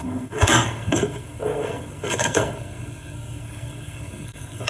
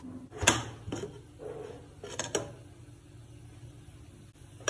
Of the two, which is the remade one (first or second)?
first